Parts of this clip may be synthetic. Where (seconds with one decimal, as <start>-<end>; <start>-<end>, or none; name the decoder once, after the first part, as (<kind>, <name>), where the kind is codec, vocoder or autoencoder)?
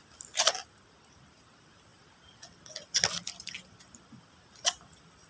none